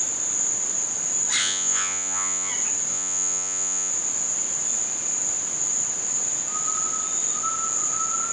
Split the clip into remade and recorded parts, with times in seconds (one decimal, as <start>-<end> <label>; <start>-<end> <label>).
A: 0.0-1.4 recorded; 1.4-2.5 remade; 2.5-2.9 recorded; 2.9-3.9 remade; 3.9-8.3 recorded